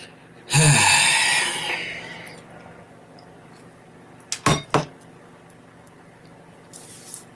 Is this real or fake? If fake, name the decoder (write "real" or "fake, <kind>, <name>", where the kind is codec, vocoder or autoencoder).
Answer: real